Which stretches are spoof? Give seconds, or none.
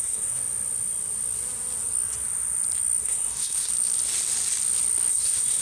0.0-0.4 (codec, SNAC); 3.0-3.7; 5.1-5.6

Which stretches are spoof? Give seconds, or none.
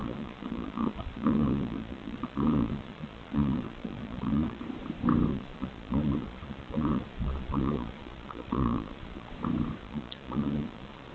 0.0-4.6 (vocoder, Vocos); 5.3-9.3; 9.8-11.1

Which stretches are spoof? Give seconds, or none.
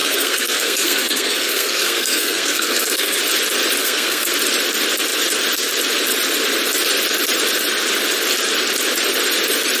0.0-3.2 (codec, SNAC); 3.8-4.3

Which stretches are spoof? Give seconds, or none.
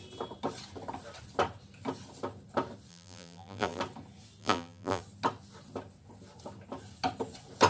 2.9-3.8 (vocoder, BigVGAN v2); 4.4-5.0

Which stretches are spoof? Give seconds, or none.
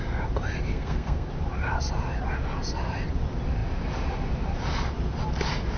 0.7-1.3 (codec, SNAC)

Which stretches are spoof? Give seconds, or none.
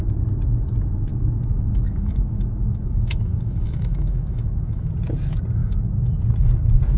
1.1-4.9 (autoencoder, DAC-VAE); 5.6-6.2